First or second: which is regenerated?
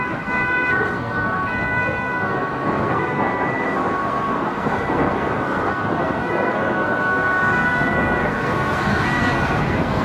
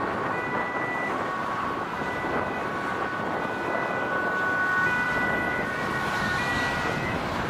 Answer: first